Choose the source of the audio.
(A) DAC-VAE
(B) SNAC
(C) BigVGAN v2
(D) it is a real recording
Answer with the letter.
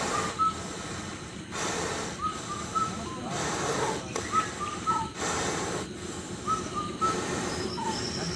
D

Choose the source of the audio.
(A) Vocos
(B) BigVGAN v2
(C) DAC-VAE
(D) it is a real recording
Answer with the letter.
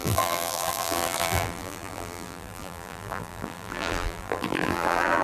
B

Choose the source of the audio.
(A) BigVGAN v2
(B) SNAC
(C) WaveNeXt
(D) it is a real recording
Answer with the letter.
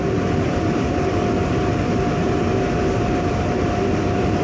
A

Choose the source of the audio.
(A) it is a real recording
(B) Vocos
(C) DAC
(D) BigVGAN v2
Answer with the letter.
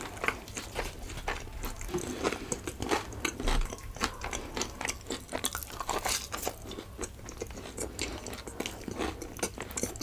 A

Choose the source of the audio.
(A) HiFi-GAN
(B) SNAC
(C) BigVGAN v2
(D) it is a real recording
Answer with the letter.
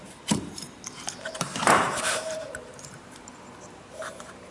C